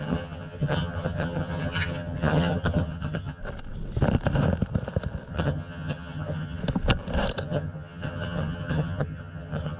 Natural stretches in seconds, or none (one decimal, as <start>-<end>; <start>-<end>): 3.4-5.3; 6.6-7.4